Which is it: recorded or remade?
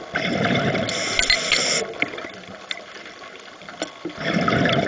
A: recorded